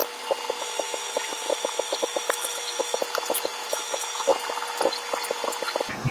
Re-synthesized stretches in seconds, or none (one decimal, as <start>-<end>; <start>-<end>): 0.6-3.0; 3.7-4.3